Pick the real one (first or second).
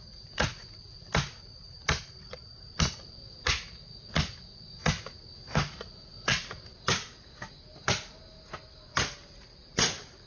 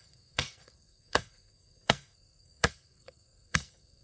first